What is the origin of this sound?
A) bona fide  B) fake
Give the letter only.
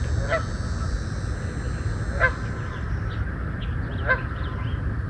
A